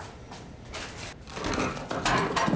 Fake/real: real